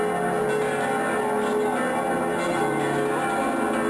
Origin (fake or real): real